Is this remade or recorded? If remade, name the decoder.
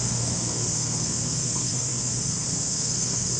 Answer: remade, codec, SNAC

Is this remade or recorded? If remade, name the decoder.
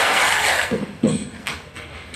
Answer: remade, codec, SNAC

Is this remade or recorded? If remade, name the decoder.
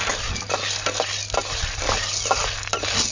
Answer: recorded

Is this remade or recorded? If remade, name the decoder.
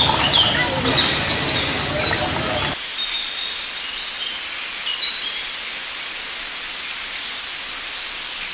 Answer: recorded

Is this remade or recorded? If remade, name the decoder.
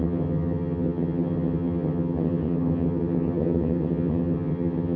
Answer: remade, vocoder, HiFi-GAN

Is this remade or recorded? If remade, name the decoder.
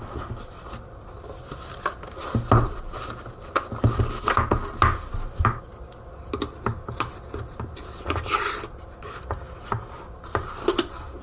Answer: recorded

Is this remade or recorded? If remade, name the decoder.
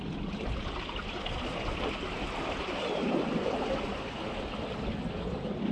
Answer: recorded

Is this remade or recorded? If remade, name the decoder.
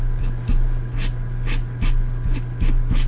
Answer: recorded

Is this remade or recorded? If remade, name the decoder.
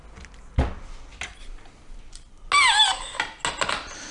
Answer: recorded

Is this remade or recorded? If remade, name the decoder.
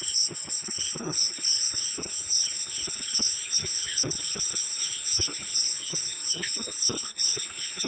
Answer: remade, codec, HILCodec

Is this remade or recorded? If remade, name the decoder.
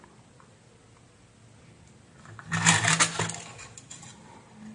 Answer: recorded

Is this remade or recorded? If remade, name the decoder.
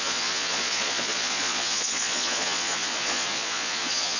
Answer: remade, vocoder, Vocos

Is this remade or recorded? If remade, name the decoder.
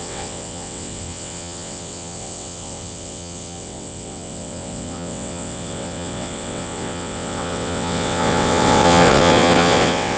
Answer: remade, vocoder, WaveNeXt